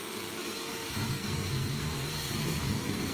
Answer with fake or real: fake